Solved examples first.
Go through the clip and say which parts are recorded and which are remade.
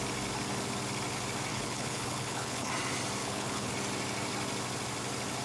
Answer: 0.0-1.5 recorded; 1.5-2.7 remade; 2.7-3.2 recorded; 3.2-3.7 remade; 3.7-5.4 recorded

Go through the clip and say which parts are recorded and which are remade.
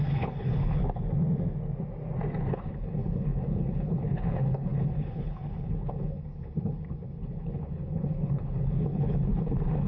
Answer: 0.0-0.8 remade; 0.8-2.5 recorded; 2.5-9.9 remade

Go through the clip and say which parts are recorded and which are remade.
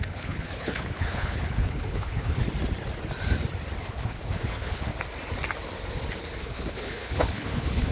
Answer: 0.0-2.4 remade; 2.4-3.8 recorded; 3.8-4.9 remade; 4.9-6.4 recorded; 6.4-7.9 remade